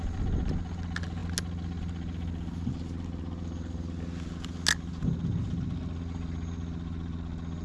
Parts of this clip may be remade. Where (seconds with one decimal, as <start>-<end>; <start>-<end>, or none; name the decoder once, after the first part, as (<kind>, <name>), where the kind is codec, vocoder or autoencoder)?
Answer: none